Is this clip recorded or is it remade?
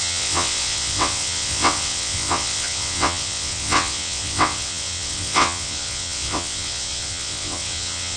remade